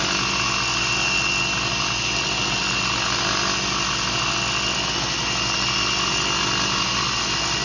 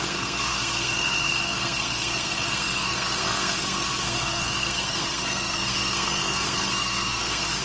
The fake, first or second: second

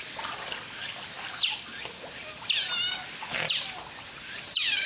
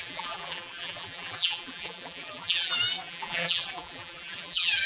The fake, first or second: second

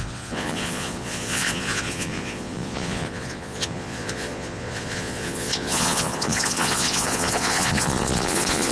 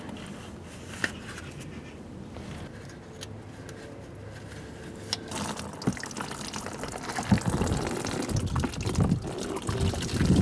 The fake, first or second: first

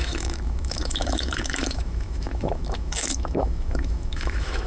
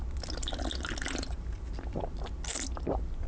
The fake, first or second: first